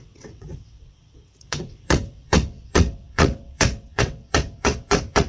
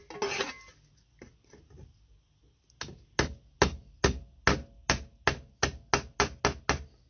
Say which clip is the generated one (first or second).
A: first